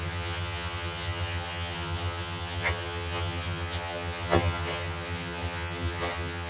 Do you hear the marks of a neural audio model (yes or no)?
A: yes